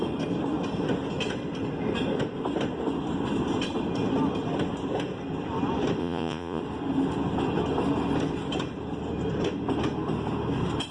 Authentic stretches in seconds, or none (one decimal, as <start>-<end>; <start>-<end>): 0.0-6.0; 6.6-10.9

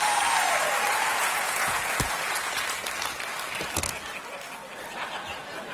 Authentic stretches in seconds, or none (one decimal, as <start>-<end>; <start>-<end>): 0.0-0.9; 2.6-5.7

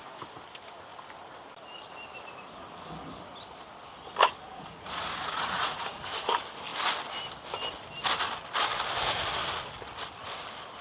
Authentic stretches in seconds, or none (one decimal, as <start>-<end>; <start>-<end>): 0.0-4.5; 6.0-10.8

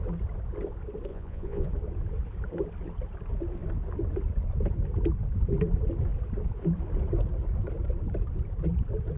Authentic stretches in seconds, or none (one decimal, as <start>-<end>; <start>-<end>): 0.0-1.1; 1.7-9.2

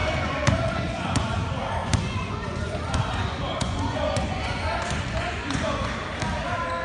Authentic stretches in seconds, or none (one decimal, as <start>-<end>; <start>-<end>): 1.4-1.8; 5.9-6.8